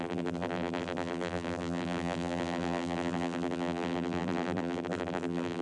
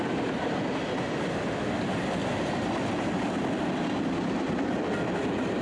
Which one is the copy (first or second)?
first